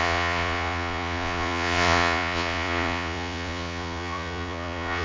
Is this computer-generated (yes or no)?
yes